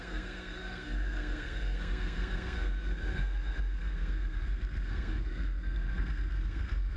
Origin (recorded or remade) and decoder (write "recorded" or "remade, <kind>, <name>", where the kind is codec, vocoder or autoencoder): remade, codec, SNAC